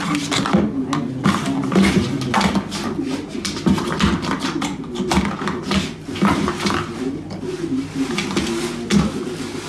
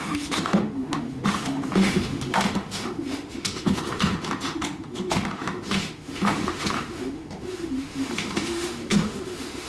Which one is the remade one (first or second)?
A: second